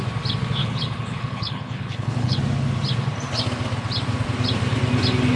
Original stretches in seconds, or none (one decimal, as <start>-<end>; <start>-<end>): 0.0-0.6; 2.4-5.4